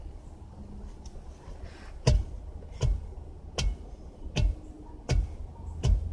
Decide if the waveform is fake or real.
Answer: real